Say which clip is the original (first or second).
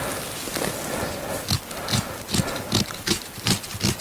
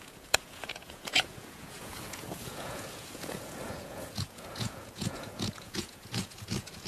first